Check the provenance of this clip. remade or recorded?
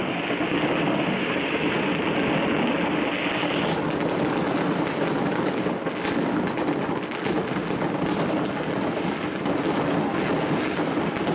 recorded